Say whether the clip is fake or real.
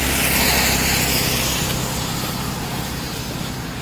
real